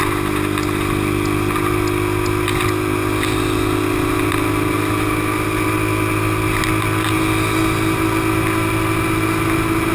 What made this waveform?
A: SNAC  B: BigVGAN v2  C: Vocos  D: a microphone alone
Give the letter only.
D